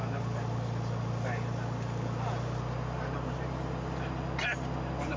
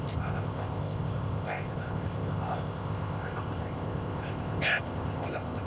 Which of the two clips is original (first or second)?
first